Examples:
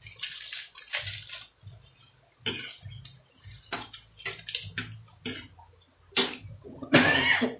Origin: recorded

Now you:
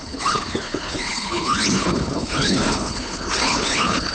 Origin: remade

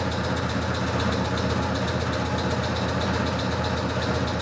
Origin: recorded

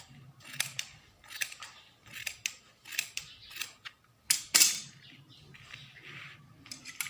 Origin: recorded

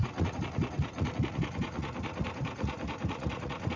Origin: remade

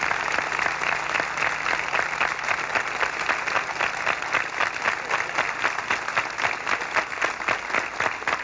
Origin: recorded